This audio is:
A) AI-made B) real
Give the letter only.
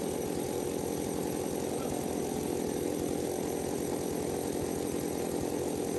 B